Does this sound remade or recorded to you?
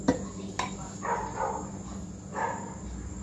recorded